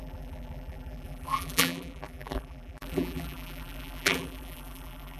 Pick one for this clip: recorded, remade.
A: remade